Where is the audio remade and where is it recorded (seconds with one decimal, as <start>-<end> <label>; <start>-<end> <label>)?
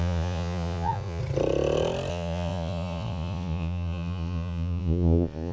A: 0.0-1.2 remade; 1.2-2.1 recorded; 2.1-5.5 remade